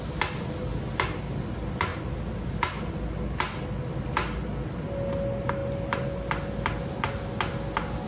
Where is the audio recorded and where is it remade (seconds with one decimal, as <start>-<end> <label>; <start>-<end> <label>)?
0.0-8.1 recorded

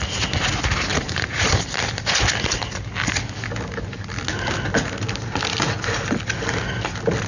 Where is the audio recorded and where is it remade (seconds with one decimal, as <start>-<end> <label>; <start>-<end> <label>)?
0.0-0.9 recorded; 0.9-1.5 remade; 1.5-7.3 recorded